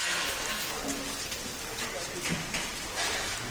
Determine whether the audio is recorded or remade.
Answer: recorded